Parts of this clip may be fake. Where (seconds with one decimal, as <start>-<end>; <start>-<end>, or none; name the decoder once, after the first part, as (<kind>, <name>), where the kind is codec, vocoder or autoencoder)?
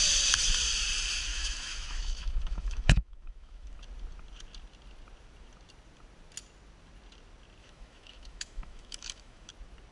1.3-3.8 (autoencoder, DAC-VAE); 7.6-9.5